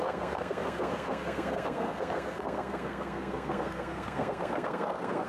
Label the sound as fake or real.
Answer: fake